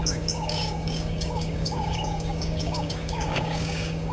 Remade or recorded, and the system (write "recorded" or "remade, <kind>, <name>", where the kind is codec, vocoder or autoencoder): remade, codec, DAC